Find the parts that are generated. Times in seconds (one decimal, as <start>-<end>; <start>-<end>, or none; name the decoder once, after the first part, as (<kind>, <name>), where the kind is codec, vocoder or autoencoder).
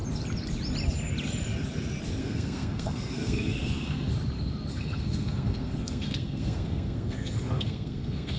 2.2-4.1 (codec, SNAC); 4.7-8.4